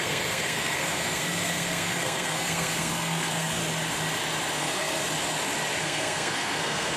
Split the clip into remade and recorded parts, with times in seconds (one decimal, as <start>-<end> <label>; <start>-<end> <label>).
0.0-3.6 remade; 3.6-4.6 recorded; 4.6-5.0 remade; 5.0-5.8 recorded; 5.8-7.0 remade